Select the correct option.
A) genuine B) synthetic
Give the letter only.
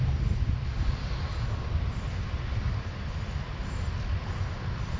B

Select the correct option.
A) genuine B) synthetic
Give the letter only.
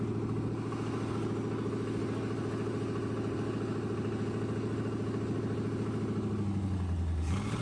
A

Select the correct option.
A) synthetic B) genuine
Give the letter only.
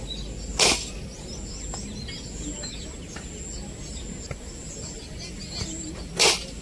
B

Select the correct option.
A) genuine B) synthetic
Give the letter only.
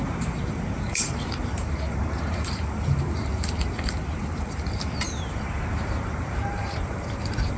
B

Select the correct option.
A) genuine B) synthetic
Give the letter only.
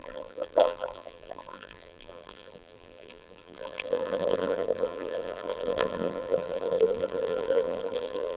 B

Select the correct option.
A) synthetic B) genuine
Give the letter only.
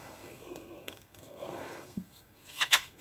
A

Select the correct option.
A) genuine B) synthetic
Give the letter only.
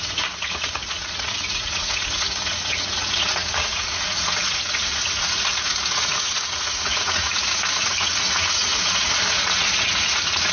B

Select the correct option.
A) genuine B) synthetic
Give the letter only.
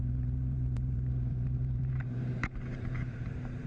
B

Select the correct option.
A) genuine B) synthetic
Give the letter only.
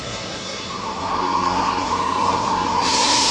B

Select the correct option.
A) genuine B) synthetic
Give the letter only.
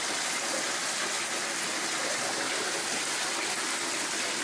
A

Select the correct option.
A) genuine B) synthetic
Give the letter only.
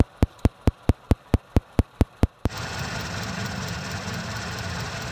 A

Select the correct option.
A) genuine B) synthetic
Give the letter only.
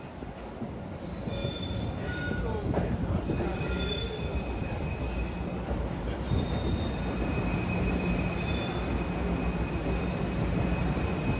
A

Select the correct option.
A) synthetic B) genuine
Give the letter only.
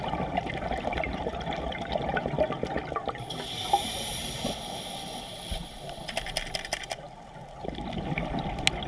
B